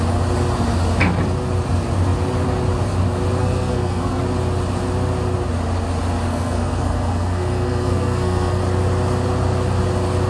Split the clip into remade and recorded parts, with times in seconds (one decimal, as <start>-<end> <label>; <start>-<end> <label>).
0.0-3.4 recorded; 3.4-4.2 remade; 4.2-6.3 recorded; 6.3-8.6 remade; 8.6-10.3 recorded